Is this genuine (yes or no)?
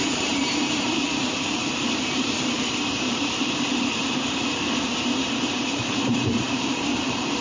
no